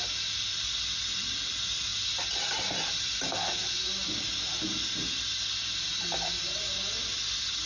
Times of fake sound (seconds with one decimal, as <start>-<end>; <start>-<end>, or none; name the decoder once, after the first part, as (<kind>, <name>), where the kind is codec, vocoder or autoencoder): none